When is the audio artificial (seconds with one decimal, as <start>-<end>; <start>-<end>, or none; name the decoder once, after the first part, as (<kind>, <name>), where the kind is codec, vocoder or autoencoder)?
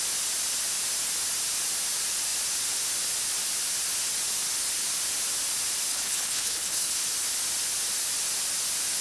5.9-7.0 (codec, HILCodec)